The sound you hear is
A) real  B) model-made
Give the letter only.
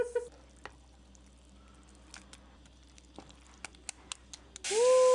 A